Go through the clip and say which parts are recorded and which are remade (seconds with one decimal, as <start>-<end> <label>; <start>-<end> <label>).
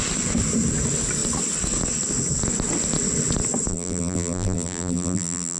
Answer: 0.0-3.7 recorded; 3.7-5.6 remade